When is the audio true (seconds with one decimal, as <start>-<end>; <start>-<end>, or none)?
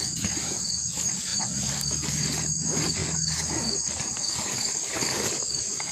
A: none